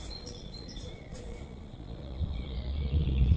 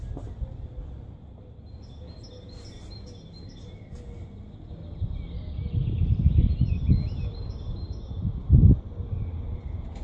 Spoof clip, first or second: first